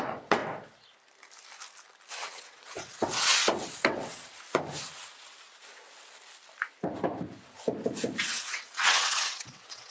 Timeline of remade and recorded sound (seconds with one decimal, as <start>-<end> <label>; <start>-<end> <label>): 0.0-0.4 remade; 0.4-2.1 recorded; 2.1-4.3 remade; 4.3-8.2 recorded; 8.2-9.9 remade